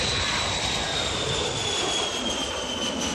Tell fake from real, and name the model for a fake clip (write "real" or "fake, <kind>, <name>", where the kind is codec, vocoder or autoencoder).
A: real